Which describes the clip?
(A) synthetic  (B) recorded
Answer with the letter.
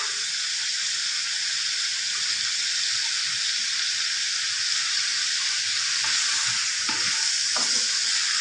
B